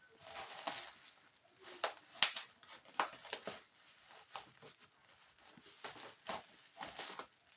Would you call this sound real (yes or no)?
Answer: yes